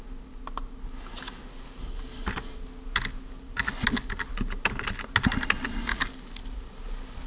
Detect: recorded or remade recorded